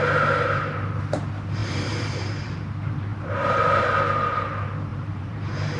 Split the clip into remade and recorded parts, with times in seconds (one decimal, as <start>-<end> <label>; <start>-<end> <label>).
0.0-1.6 recorded; 1.6-2.6 remade; 2.6-3.1 recorded; 3.1-3.8 remade; 3.8-4.9 recorded; 4.9-5.8 remade